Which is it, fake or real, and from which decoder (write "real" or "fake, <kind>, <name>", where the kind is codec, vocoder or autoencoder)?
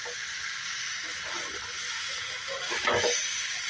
real